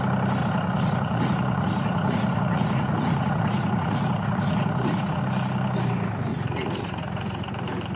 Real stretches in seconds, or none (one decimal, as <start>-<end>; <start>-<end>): 0.0-0.4; 5.2-6.3; 7.5-8.0